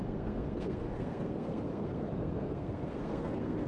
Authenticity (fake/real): fake